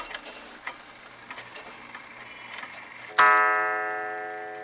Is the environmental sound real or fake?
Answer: real